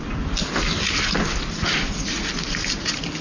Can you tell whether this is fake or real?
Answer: real